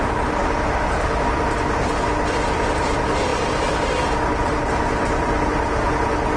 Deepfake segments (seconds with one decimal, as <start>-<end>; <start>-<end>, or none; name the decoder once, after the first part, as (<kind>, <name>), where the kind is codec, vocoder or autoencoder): none